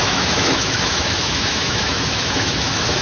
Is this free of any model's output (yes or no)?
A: no